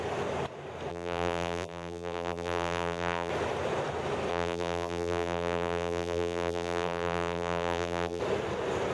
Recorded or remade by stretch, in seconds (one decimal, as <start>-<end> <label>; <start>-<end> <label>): 0.0-0.9 recorded; 0.9-3.3 remade; 3.3-4.3 recorded; 4.3-8.2 remade; 8.2-8.9 recorded